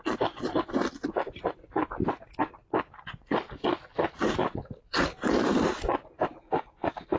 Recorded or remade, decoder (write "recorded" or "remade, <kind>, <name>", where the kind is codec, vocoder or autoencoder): recorded